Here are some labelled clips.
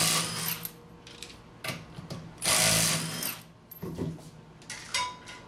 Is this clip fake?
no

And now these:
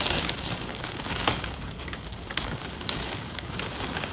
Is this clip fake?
yes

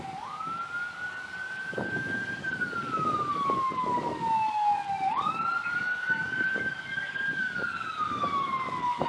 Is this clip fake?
yes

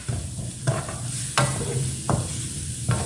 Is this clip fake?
no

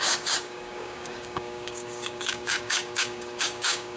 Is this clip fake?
yes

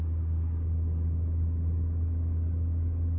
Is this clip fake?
yes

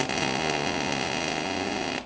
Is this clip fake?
no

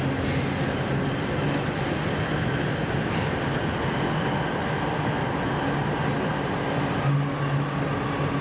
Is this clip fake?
no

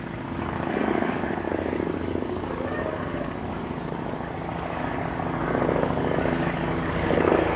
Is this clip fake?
yes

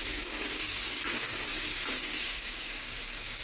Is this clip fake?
yes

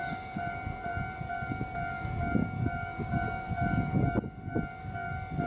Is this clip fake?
yes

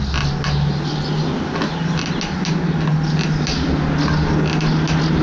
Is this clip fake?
no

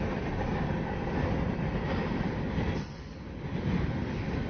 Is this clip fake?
no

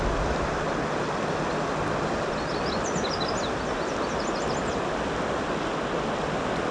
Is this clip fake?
no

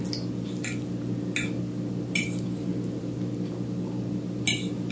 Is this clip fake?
no